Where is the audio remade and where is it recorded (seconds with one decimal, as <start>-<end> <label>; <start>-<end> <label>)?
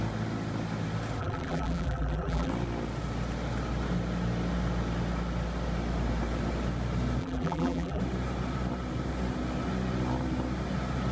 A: 0.0-1.2 recorded; 1.2-2.5 remade; 2.5-7.2 recorded; 7.2-8.0 remade; 8.0-11.1 recorded